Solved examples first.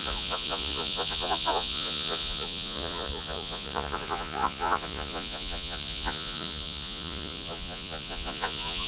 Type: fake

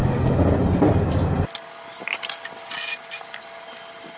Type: real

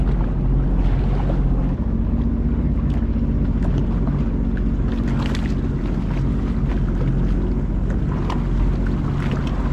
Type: real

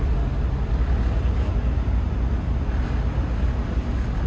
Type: real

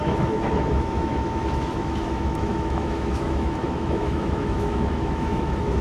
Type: fake